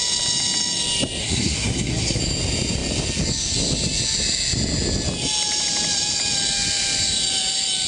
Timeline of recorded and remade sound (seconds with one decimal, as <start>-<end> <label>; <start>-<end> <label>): 0.0-1.2 recorded; 1.2-2.2 remade; 2.2-7.9 recorded